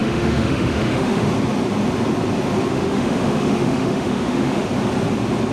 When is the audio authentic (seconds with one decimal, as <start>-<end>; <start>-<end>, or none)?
1.3-2.7; 4.7-5.5